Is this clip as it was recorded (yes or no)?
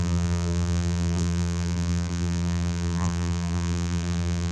no